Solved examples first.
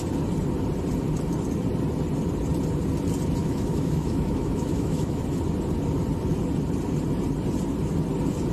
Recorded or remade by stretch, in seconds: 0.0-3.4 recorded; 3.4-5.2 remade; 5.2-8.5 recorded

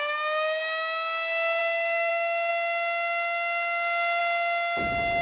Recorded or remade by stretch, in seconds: 0.0-5.2 recorded

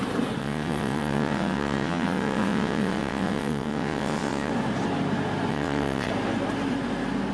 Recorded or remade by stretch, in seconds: 0.0-0.4 recorded; 0.4-4.5 remade; 4.5-5.5 recorded; 5.5-6.1 remade; 6.1-7.3 recorded

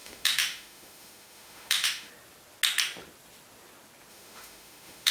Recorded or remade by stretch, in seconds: 0.0-2.1 remade; 2.1-4.1 recorded; 4.1-5.1 remade